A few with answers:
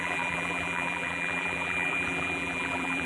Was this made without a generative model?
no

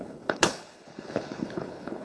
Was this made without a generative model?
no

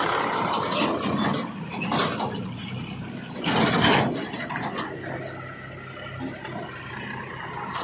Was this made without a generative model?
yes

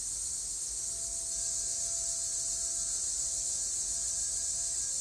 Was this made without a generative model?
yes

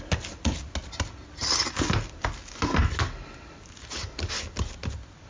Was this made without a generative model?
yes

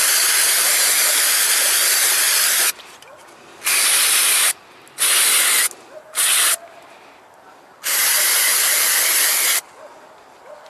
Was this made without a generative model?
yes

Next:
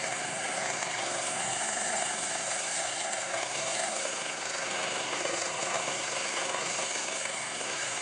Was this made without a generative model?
no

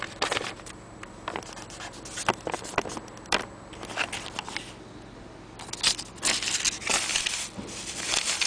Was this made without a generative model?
yes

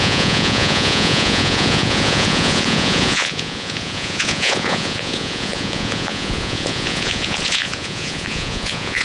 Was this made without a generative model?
no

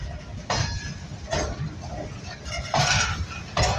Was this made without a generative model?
yes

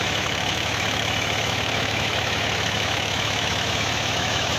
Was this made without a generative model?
no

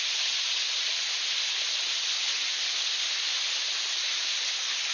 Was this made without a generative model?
yes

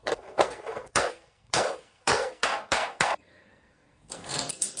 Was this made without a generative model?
no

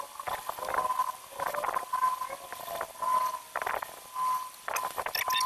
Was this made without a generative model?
yes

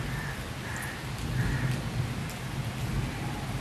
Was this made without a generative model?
yes